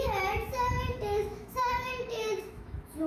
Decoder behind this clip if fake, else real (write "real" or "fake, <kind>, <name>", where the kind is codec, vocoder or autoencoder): fake, autoencoder, DAC-VAE